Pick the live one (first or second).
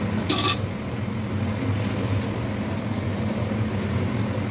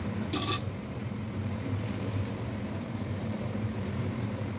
first